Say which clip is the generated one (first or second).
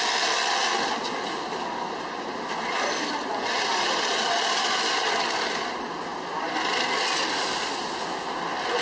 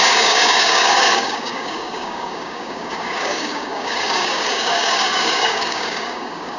second